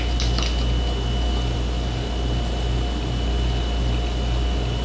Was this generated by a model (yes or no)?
no